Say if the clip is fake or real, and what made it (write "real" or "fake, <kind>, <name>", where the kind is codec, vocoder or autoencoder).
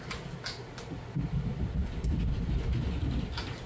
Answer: real